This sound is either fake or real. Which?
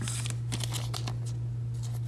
real